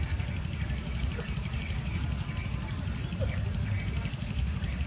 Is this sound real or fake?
real